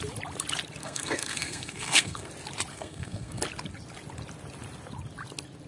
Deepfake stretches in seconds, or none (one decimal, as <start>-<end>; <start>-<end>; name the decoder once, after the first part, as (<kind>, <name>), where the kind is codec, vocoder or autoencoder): 0.8-2.3 (codec, SNAC); 2.7-3.4